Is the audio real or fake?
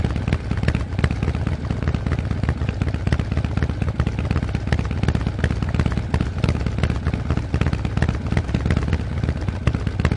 real